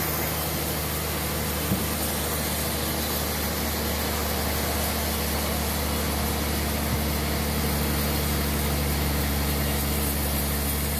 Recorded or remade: recorded